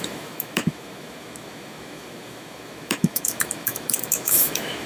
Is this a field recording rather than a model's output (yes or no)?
no